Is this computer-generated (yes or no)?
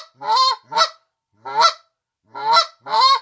no